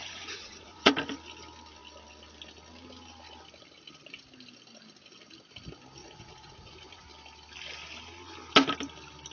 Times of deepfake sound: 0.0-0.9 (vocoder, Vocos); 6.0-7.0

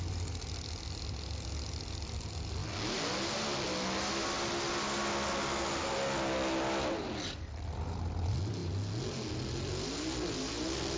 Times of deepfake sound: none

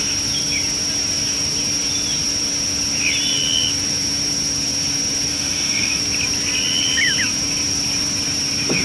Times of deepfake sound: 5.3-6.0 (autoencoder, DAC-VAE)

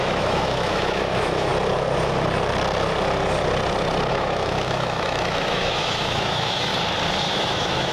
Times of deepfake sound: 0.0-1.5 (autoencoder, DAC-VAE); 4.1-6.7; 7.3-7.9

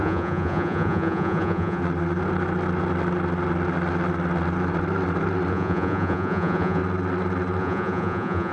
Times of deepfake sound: 0.0-1.8 (vocoder, Vocos); 5.5-6.8; 7.6-8.5

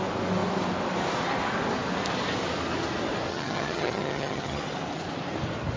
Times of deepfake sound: 3.3-4.6 (vocoder, HiFi-GAN)

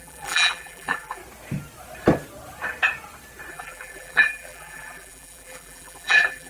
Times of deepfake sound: 0.0-1.2 (vocoder, BigVGAN v2); 3.5-6.5

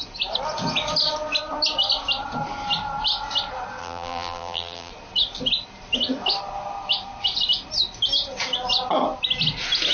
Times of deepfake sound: 3.8-4.9 (vocoder, BigVGAN v2)